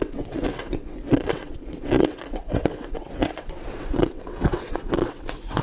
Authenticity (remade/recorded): remade